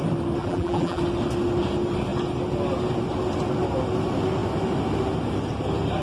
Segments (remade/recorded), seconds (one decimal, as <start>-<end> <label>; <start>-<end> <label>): 0.0-0.4 recorded; 0.4-1.0 remade; 1.0-6.0 recorded